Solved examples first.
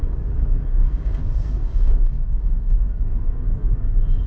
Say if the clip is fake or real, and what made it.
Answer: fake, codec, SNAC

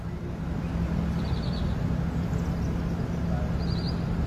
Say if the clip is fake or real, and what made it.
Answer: real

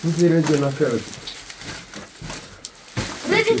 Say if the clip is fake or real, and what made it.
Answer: real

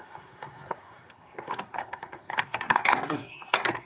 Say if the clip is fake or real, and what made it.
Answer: fake, codec, SNAC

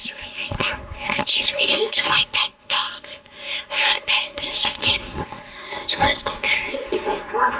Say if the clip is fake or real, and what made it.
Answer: fake, codec, SNAC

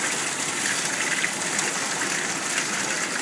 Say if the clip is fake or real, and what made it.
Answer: real